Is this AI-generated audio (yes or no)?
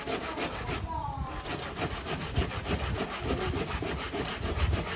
no